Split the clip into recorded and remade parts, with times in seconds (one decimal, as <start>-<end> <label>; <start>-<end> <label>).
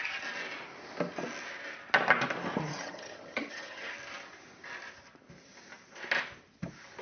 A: 0.0-2.7 recorded; 2.7-3.9 remade; 3.9-7.0 recorded